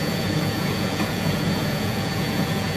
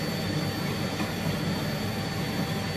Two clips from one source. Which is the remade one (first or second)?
first